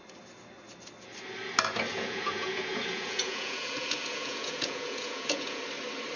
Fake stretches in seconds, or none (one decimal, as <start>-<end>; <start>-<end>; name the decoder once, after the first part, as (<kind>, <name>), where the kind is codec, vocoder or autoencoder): 1.9-5.6 (vocoder, Vocos)